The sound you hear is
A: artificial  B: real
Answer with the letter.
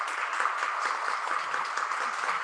B